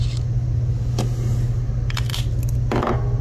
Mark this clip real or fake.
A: real